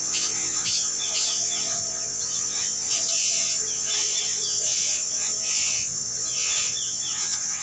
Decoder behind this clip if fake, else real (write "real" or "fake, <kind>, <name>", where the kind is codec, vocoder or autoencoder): fake, vocoder, WaveNeXt